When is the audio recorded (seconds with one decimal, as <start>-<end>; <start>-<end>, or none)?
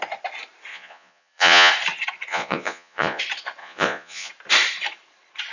0.0-0.7; 1.7-2.3; 3.2-3.6; 4.3-5.5